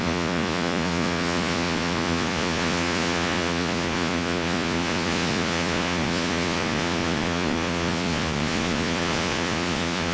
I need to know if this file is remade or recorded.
remade